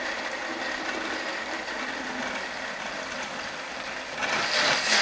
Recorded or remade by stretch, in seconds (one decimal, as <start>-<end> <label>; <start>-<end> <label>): 0.0-5.0 recorded